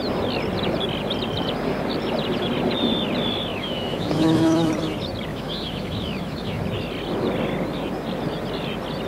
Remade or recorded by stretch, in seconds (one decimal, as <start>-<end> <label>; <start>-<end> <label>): 0.0-3.5 recorded; 3.5-4.7 remade; 4.7-5.3 recorded; 5.3-6.6 remade; 6.6-9.1 recorded